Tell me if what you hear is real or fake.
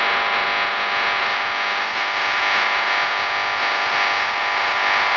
real